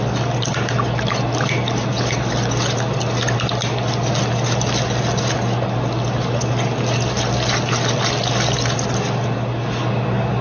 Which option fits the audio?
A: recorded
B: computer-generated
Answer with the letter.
A